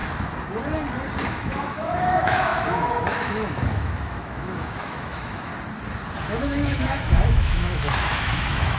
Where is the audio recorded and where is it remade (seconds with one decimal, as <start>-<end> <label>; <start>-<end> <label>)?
0.0-1.3 recorded; 1.3-5.5 remade; 5.5-6.2 recorded; 6.2-8.8 remade